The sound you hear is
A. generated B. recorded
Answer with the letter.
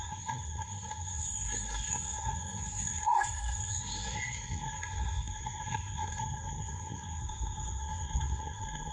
A